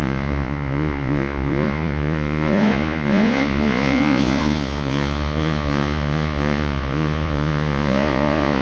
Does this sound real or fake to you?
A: fake